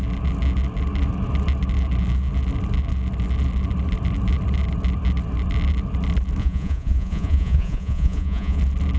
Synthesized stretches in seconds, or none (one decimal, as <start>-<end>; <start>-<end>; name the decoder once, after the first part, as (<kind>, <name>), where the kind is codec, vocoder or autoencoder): 6.4-8.6 (vocoder, Vocos)